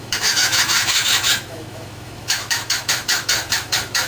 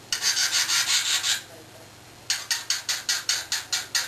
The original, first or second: second